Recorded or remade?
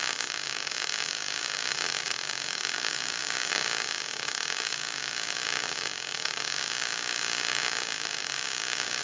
remade